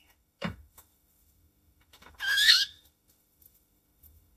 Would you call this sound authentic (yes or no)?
no